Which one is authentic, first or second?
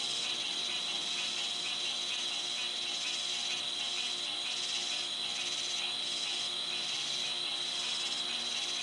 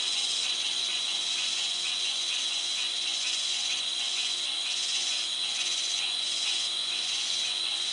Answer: first